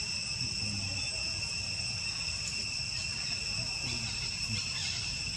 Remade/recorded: recorded